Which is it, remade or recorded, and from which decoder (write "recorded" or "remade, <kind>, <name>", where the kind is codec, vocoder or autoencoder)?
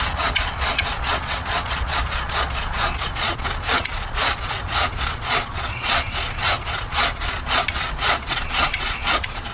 remade, vocoder, Vocos